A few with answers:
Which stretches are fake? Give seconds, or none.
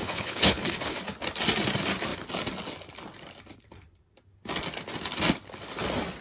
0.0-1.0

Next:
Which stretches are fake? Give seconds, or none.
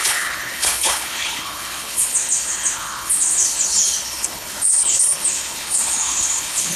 0.0-6.8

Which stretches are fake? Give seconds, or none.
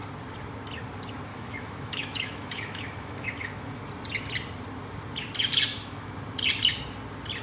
1.3-3.8; 5.7-6.2